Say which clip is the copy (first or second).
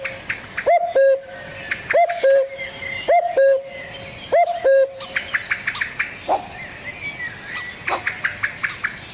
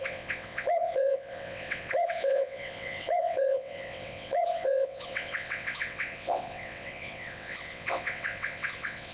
second